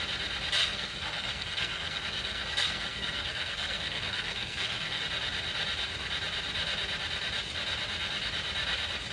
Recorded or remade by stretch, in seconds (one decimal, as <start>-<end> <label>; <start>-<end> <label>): 0.0-0.6 recorded; 0.6-5.0 remade; 5.0-9.1 recorded